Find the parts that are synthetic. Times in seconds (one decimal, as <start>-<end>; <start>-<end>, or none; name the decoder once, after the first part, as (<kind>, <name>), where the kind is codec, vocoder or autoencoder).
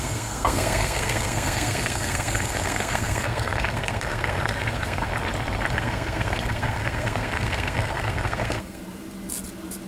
0.0-5.1 (codec, SNAC); 5.7-8.8